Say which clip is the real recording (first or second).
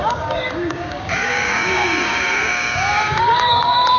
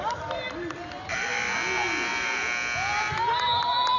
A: second